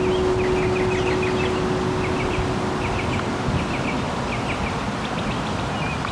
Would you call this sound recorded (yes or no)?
yes